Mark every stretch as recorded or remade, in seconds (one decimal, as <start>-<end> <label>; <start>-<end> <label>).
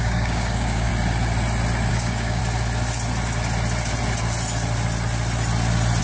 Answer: 0.0-0.9 remade; 0.9-1.9 recorded; 1.9-2.4 remade; 2.4-6.0 recorded